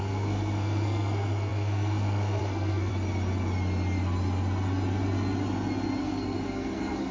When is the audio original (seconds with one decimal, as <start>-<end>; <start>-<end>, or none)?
2.9-6.0